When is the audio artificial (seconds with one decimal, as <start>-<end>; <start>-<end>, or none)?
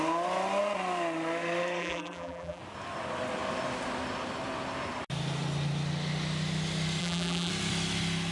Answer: 1.8-2.6; 7.0-7.5